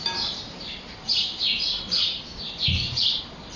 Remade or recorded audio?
recorded